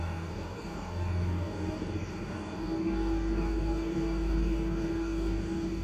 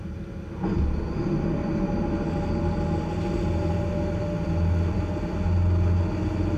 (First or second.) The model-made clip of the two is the first